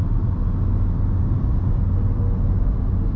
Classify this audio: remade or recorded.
recorded